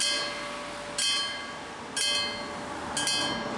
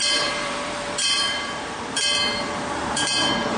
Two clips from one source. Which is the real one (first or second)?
first